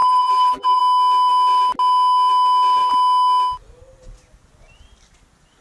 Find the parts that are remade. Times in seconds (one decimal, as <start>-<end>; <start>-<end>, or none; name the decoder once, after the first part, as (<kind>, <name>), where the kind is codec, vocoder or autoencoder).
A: 0.0-0.8 (vocoder, BigVGAN v2)